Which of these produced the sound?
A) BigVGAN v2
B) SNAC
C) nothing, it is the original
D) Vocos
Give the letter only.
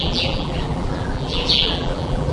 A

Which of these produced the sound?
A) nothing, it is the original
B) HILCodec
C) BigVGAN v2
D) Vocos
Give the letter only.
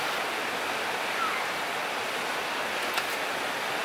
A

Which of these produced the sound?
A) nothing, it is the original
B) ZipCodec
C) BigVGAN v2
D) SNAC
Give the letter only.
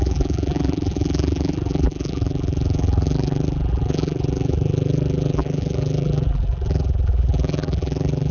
C